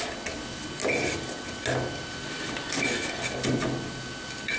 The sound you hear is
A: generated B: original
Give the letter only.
B